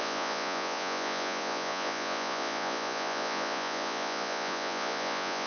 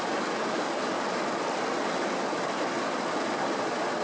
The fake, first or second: first